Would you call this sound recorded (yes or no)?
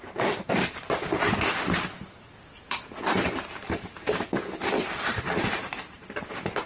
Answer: no